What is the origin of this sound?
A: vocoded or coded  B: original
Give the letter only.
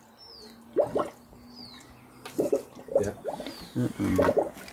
B